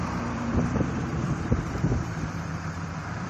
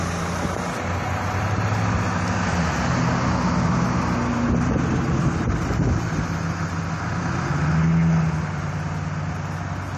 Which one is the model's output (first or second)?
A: first